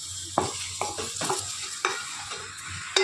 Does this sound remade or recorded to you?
remade